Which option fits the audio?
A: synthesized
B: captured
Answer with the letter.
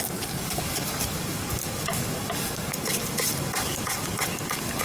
A